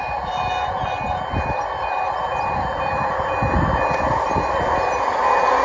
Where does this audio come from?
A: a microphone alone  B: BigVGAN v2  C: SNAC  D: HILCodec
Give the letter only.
A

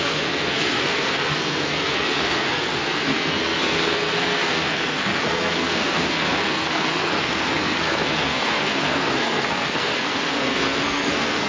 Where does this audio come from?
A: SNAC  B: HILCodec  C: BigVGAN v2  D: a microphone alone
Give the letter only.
A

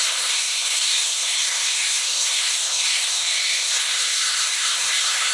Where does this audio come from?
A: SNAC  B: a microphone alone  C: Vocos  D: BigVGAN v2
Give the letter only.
A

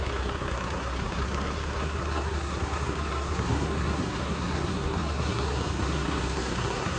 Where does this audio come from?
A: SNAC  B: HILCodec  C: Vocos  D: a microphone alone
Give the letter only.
A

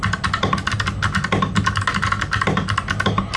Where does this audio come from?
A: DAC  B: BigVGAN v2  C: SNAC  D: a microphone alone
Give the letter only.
D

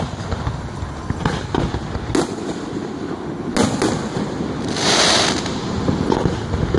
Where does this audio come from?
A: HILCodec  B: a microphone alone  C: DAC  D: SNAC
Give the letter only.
B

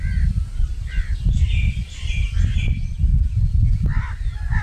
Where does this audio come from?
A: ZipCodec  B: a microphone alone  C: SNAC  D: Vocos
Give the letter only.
B